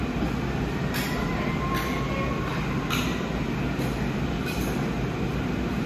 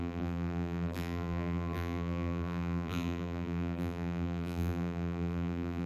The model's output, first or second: second